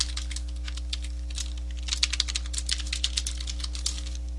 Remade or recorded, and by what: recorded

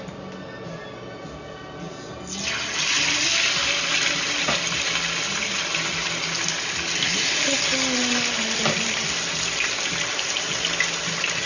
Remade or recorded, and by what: recorded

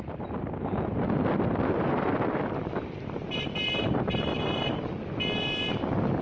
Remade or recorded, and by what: recorded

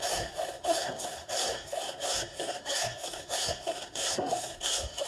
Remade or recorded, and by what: remade, codec, SNAC